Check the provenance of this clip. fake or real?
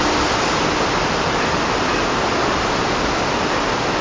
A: real